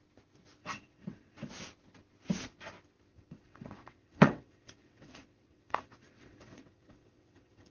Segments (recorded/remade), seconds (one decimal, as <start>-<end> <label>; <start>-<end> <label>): 0.0-0.6 recorded; 0.6-1.5 remade; 1.5-3.1 recorded; 3.1-7.7 remade